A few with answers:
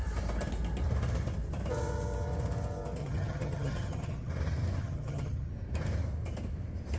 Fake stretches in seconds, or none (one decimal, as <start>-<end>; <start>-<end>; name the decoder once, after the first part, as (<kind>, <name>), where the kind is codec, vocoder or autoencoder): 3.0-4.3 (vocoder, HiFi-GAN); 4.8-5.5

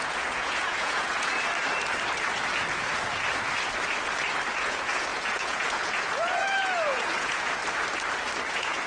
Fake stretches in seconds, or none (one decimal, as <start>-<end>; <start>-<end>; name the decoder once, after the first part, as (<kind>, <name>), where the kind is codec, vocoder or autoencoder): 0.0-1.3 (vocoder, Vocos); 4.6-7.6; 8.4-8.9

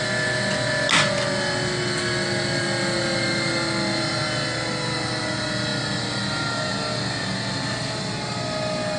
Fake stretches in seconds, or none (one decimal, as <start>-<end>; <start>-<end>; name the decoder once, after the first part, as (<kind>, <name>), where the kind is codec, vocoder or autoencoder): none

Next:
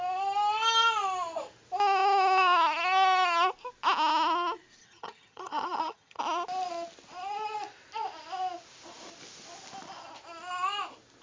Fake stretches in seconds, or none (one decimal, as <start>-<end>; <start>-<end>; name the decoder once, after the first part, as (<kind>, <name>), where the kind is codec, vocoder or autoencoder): 4.8-6.2 (vocoder, HiFi-GAN)

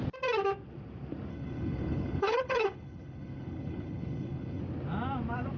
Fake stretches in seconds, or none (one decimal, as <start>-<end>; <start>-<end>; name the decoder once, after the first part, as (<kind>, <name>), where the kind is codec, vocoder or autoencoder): 1.3-4.6 (codec, HILCodec)

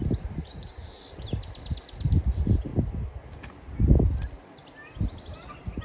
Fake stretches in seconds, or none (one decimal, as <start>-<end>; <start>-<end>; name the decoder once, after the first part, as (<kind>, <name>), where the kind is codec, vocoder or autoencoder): 0.4-1.0 (vocoder, Vocos)